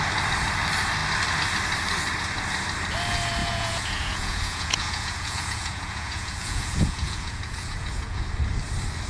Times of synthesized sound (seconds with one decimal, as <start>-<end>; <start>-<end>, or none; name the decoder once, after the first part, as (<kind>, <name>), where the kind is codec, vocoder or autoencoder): 3.4-8.3 (vocoder, Vocos)